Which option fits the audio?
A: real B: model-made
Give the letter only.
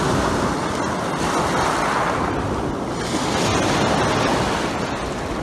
A